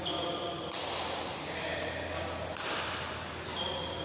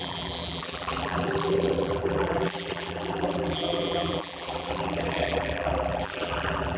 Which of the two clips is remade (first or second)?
second